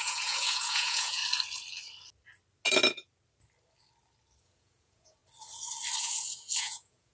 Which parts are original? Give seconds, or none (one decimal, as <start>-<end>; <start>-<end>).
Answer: 1.2-4.4; 5.2-6.0